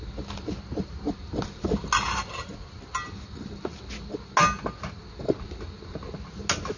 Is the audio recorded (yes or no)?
yes